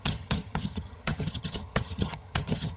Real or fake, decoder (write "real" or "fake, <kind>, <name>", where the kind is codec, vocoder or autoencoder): fake, vocoder, HiFi-GAN